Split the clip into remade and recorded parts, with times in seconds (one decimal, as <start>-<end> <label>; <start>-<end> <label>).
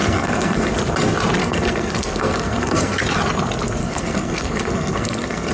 0.0-0.7 remade; 0.7-1.4 recorded; 1.4-3.0 remade; 3.0-3.8 recorded; 3.8-5.5 remade